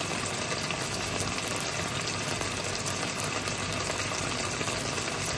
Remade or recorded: recorded